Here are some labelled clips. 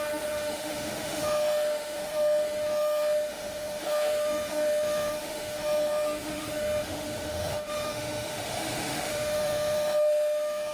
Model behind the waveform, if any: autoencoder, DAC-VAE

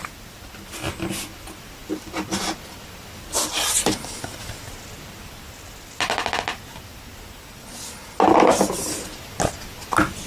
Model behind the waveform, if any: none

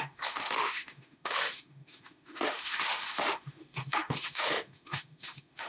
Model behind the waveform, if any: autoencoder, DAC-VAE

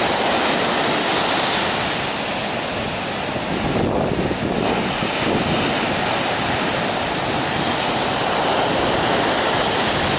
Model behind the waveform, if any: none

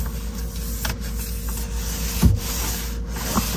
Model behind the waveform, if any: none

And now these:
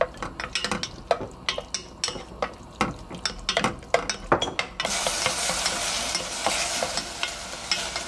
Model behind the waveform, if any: none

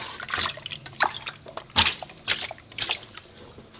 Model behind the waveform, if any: none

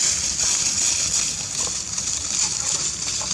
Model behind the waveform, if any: none